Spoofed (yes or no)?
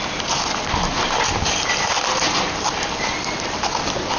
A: no